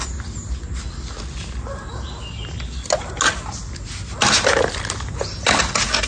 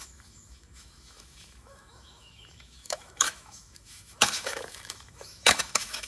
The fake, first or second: second